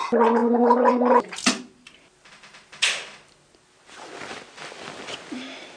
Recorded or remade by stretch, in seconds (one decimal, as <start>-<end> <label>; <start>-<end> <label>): 0.0-5.8 recorded

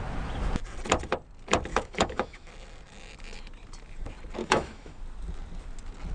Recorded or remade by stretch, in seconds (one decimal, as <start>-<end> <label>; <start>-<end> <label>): 0.0-1.7 recorded; 1.7-2.5 remade; 2.5-4.4 recorded; 4.4-5.0 remade; 5.0-6.1 recorded

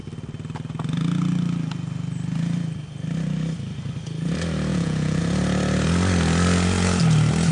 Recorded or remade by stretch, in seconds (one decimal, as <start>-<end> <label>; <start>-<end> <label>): 0.0-4.7 recorded; 4.7-5.2 remade; 5.2-7.5 recorded

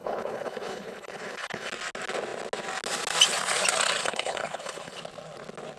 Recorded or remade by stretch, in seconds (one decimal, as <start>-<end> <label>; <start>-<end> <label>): 0.0-1.7 remade; 1.7-4.0 recorded; 4.0-5.0 remade; 5.0-5.8 recorded

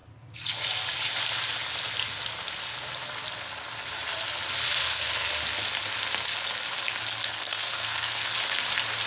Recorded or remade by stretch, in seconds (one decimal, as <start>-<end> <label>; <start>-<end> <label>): 0.0-4.8 recorded; 4.8-5.3 remade; 5.3-7.2 recorded; 7.2-8.3 remade; 8.3-9.1 recorded

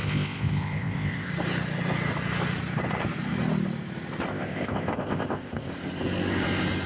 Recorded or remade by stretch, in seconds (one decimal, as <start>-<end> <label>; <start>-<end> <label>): 0.0-1.3 remade; 1.3-4.3 recorded; 4.3-5.7 remade; 5.7-6.9 recorded